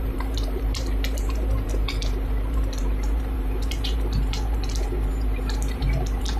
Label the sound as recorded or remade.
remade